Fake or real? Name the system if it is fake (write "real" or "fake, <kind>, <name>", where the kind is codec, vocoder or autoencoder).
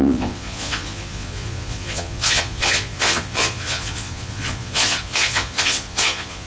fake, vocoder, Vocos